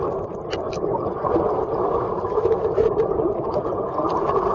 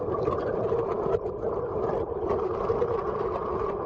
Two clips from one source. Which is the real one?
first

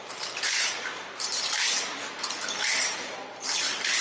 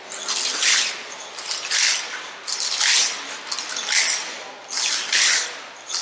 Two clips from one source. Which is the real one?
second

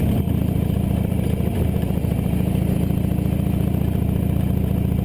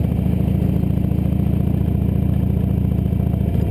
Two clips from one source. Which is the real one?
second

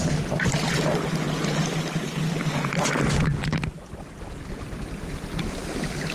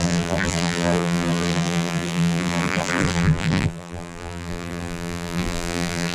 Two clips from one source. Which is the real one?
first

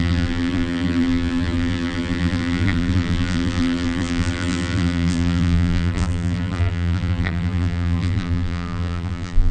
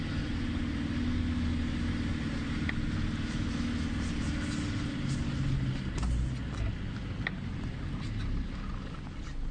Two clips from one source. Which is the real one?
second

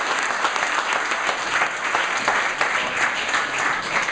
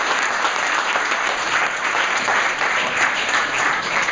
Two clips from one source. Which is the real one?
first